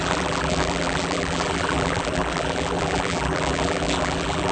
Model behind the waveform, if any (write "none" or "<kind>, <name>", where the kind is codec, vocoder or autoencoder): vocoder, BigVGAN v2